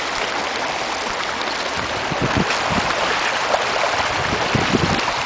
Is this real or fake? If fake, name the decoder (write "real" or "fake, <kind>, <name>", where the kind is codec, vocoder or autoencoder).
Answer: real